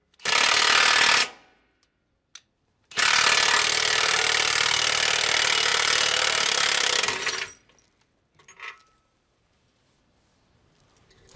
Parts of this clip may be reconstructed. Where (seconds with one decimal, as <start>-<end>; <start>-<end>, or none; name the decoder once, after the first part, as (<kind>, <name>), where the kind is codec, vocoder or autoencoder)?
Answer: 5.7-10.0 (vocoder, BigVGAN v2)